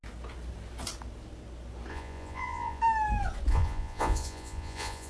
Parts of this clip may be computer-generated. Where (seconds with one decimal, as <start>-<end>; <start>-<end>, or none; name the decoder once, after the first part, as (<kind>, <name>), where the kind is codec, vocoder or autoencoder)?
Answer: 1.9-2.8 (vocoder, Vocos); 3.5-5.1